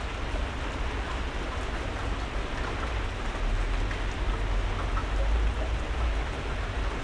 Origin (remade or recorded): recorded